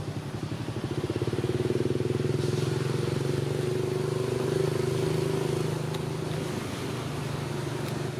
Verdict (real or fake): real